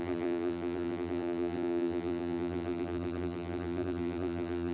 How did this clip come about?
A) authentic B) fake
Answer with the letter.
B